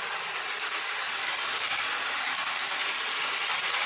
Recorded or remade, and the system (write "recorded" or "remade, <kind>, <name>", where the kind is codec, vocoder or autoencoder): recorded